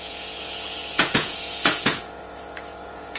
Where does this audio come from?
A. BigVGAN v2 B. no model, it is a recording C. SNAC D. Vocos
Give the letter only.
D